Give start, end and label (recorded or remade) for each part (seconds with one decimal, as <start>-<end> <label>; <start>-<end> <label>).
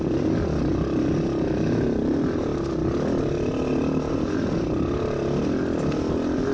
0.0-6.5 recorded